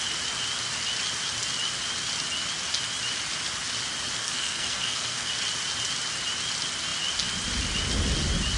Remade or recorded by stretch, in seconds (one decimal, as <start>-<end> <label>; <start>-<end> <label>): 0.0-4.2 recorded; 4.2-5.3 remade; 5.3-8.6 recorded

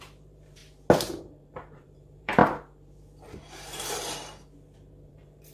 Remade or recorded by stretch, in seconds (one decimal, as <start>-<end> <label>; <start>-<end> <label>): 0.0-0.6 remade; 0.6-1.2 recorded; 1.2-2.4 remade; 2.4-5.1 recorded; 5.1-5.5 remade

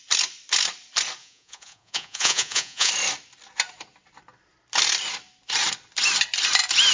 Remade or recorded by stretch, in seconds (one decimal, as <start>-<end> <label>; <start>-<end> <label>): 0.0-1.2 recorded; 1.2-2.9 remade; 2.9-6.9 recorded